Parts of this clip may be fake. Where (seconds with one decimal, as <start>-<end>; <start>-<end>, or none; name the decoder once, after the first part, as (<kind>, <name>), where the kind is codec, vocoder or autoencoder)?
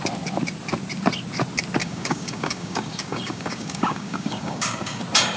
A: 1.8-5.0 (codec, DAC)